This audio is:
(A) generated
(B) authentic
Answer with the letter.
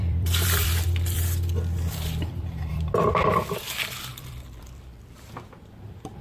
A